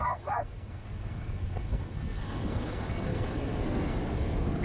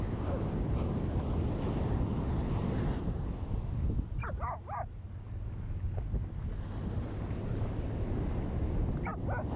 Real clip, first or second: second